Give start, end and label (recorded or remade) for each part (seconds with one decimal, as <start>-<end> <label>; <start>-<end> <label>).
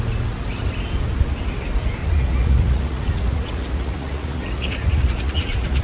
0.0-2.0 recorded; 2.0-5.8 remade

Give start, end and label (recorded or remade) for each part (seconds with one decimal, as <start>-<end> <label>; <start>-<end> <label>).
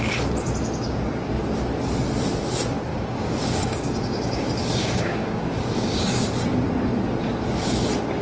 0.0-2.9 recorded; 2.9-6.3 remade; 6.3-8.2 recorded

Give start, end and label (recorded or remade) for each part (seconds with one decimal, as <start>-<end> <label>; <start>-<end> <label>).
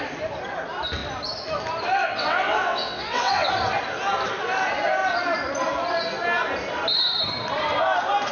0.0-2.0 recorded; 2.0-3.5 remade; 3.5-8.3 recorded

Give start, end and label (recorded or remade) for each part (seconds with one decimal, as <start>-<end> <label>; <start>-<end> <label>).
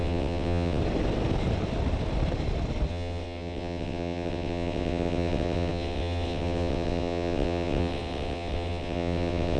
0.0-0.8 remade; 0.8-2.9 recorded; 2.9-9.6 remade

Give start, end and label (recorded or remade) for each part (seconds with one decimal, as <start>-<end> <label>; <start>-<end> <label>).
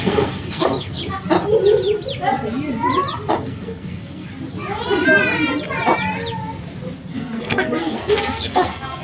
0.0-1.0 remade; 1.0-3.3 recorded; 3.3-4.3 remade; 4.3-7.1 recorded; 7.1-9.0 remade